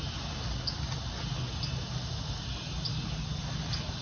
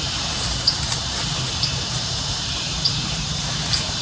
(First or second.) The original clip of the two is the first